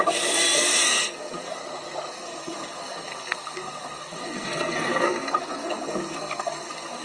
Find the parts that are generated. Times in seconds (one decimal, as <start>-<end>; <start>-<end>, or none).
0.0-1.6; 2.1-7.0